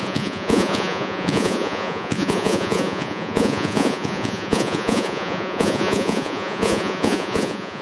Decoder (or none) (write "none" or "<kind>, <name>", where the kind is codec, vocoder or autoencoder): vocoder, Vocos